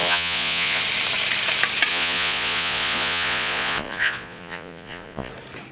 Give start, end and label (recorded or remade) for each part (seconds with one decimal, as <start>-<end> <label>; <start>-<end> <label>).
0.0-0.8 remade; 0.8-1.9 recorded; 1.9-5.3 remade; 5.3-5.7 recorded